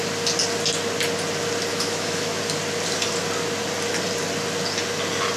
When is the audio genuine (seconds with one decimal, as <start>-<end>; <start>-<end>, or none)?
0.0-1.7; 2.4-5.4